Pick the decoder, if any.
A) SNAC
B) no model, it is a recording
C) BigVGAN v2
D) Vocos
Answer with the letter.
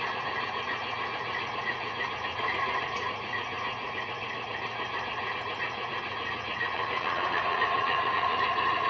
D